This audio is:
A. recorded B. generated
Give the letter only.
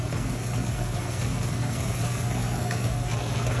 B